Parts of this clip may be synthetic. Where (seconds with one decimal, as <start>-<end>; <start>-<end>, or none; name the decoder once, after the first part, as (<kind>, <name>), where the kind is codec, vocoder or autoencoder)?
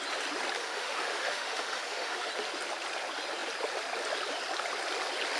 0.6-2.3 (autoencoder, DAC-VAE)